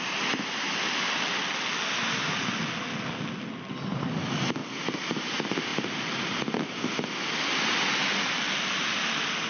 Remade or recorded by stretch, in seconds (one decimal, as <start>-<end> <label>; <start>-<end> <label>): 0.0-9.5 recorded